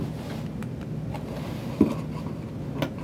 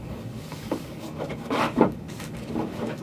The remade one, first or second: second